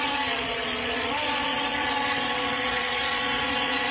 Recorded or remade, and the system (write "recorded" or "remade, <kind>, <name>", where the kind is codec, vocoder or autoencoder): remade, vocoder, Vocos